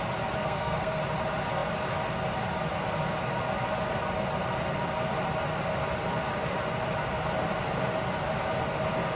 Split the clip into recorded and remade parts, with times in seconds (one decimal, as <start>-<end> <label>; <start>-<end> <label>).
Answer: 0.0-0.4 recorded; 0.4-1.0 remade; 1.0-9.2 recorded